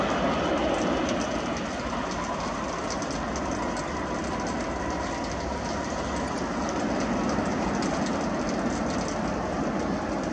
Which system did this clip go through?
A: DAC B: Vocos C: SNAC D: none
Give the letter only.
D